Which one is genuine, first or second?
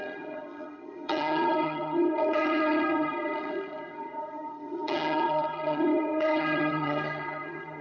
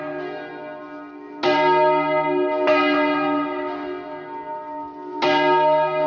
second